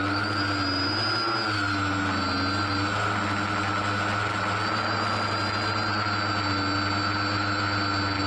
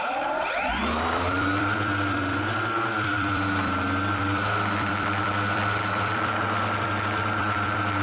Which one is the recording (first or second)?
first